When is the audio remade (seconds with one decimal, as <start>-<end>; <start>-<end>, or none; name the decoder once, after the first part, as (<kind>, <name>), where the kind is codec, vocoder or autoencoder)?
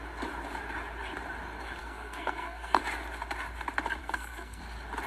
1.8-2.8 (codec, SNAC); 4.0-4.6